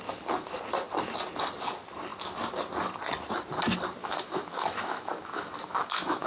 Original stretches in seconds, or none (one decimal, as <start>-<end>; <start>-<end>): 0.0-4.0